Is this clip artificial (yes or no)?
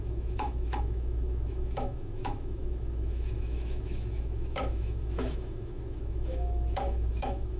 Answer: yes